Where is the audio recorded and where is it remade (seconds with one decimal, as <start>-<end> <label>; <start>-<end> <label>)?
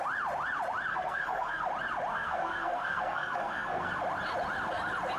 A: 0.0-0.9 recorded; 0.9-1.7 remade; 1.7-2.1 recorded; 2.1-3.9 remade; 3.9-5.2 recorded